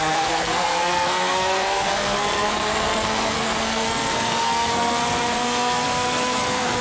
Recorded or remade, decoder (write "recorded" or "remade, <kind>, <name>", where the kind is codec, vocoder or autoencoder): remade, codec, SNAC